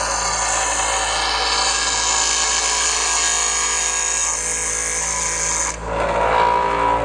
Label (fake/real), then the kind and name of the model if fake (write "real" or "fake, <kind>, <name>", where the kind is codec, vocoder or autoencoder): real